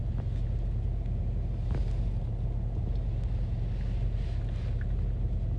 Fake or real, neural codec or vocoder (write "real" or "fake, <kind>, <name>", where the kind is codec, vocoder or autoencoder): real